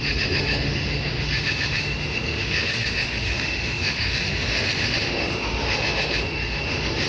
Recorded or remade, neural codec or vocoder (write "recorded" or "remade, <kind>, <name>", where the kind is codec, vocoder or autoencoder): remade, autoencoder, DAC-VAE